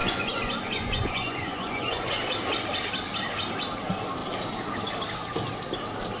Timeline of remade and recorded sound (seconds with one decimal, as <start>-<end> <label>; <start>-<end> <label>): 0.0-2.1 remade; 2.1-6.2 recorded